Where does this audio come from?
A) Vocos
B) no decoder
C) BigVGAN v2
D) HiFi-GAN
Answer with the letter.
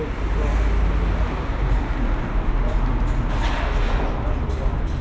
B